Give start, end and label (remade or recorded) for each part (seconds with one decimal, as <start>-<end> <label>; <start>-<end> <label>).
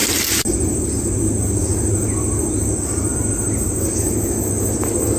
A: 0.0-5.2 recorded